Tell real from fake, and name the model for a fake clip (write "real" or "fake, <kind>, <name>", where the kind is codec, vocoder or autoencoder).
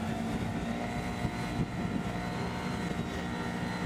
real